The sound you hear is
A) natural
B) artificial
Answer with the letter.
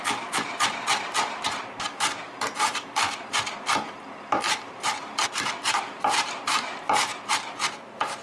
B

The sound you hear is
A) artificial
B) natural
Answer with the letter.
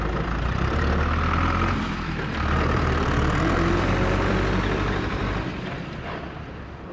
A